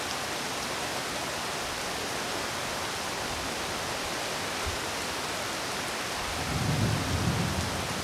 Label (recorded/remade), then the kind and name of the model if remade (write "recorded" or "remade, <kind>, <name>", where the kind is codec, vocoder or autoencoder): recorded